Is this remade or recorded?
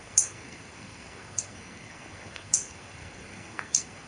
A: remade